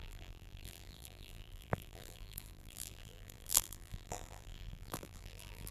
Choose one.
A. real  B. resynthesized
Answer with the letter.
B